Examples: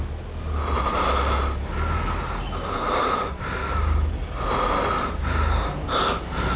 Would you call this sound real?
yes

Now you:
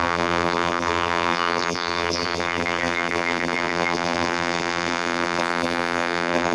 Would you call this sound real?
no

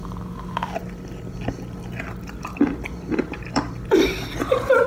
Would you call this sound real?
yes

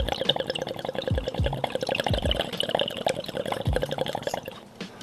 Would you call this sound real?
no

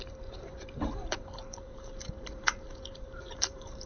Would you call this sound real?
no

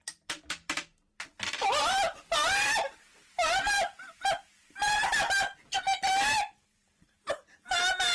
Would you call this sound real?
no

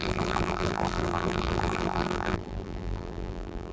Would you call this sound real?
no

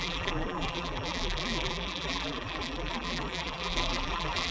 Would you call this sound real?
no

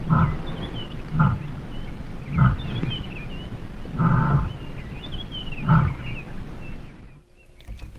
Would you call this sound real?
yes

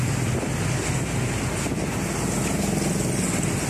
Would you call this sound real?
yes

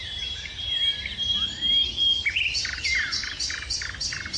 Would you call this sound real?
yes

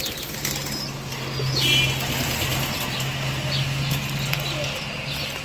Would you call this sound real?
yes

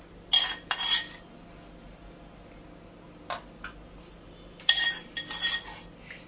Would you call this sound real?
yes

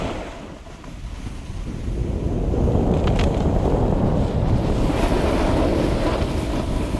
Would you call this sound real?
yes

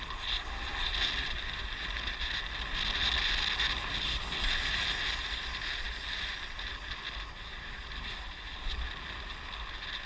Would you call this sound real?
yes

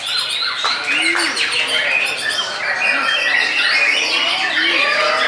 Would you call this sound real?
yes